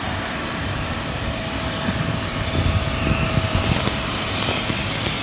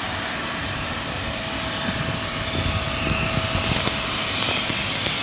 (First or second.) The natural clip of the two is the second